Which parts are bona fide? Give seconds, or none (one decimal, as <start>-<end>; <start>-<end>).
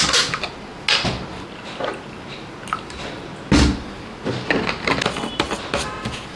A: 0.0-6.4